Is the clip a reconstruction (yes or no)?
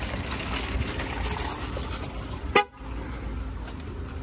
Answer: no